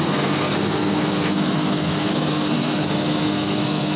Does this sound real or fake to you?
fake